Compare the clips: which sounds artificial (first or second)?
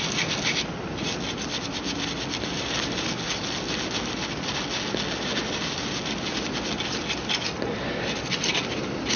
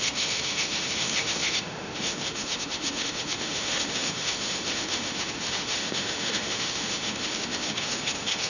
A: second